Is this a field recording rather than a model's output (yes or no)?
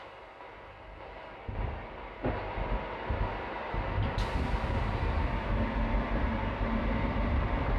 yes